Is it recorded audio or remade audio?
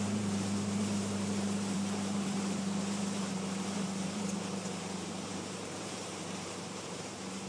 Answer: remade